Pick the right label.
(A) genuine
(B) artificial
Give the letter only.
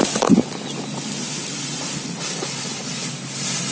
A